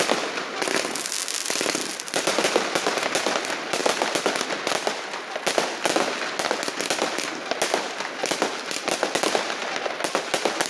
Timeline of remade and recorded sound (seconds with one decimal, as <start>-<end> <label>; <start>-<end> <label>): 0.0-10.7 recorded